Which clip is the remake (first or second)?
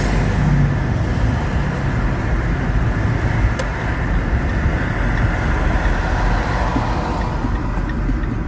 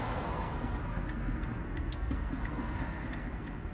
second